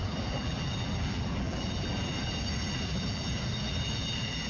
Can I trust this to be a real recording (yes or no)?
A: no